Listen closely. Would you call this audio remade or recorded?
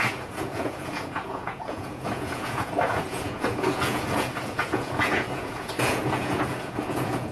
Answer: remade